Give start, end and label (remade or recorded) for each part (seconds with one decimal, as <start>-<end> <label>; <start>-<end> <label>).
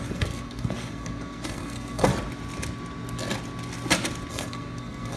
0.0-2.1 remade; 2.1-4.3 recorded; 4.3-5.2 remade